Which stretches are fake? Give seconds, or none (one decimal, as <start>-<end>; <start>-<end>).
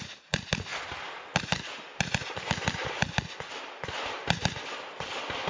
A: none